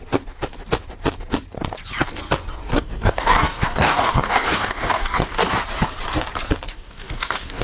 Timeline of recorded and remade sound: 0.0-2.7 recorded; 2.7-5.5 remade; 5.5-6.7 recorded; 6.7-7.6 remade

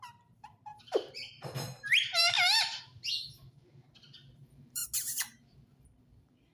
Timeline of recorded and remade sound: 0.0-4.8 remade; 4.8-5.5 recorded; 5.5-6.5 remade

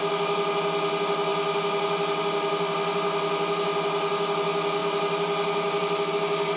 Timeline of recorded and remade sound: 0.0-6.6 recorded

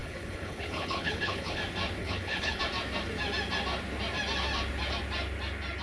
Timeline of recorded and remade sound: 0.0-1.6 remade; 1.6-2.0 recorded; 2.0-2.6 remade; 2.6-5.8 recorded

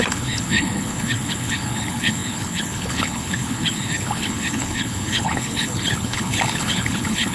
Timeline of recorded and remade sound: 0.0-7.3 remade